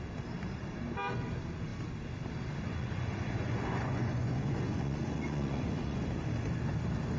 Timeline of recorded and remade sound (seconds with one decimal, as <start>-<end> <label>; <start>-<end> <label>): 0.0-2.7 recorded; 2.7-6.0 remade; 6.0-7.2 recorded